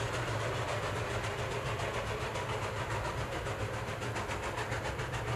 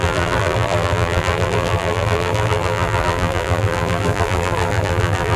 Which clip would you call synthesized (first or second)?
second